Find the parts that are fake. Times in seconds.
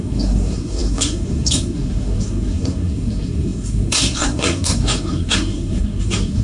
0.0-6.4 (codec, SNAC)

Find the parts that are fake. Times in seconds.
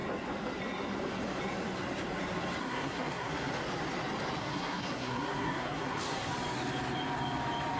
2.6-3.5 (codec, SNAC); 4.4-6.3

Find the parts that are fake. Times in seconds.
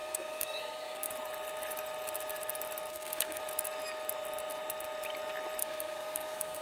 0.0-1.1 (codec, SNAC); 2.9-3.4; 5.6-6.6